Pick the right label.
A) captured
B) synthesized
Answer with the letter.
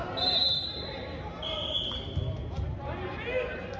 A